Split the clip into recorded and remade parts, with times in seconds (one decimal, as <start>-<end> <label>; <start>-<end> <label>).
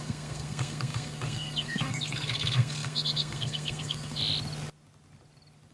0.0-4.2 remade; 4.2-5.7 recorded